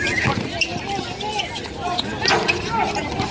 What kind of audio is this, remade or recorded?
recorded